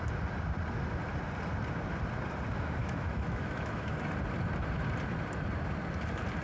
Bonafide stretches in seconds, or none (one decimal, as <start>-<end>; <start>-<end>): 0.0-2.8; 4.1-6.4